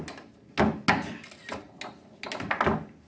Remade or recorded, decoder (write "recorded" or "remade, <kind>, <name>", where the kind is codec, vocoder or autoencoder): recorded